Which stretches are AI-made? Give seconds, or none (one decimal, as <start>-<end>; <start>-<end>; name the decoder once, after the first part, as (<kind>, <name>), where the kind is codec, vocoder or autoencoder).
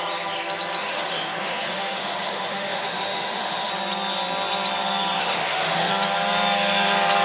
0.8-3.7 (autoencoder, DAC-VAE); 5.2-5.9